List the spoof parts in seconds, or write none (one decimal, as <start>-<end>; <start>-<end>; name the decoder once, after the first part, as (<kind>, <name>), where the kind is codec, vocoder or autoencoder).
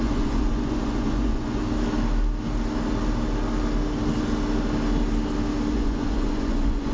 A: 0.0-1.6 (vocoder, Vocos); 5.7-6.9